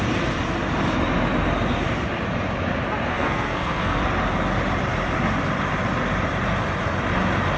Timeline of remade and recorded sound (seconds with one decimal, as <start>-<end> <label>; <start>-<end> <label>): 0.0-3.1 recorded; 3.1-4.0 remade; 4.0-7.6 recorded